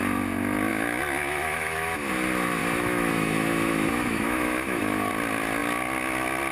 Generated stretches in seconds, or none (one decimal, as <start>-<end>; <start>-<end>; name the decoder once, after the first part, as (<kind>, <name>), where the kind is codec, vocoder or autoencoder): 0.7-2.1 (autoencoder, DAC-VAE); 2.6-5.1